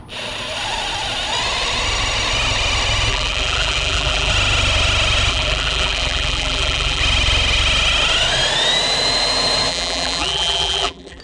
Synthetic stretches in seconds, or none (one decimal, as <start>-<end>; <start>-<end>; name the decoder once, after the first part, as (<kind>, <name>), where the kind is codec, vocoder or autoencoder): 3.1-4.3 (vocoder, BigVGAN v2); 5.3-7.0; 9.7-11.2